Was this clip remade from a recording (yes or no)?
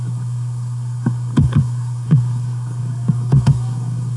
yes